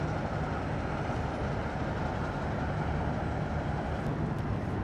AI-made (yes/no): no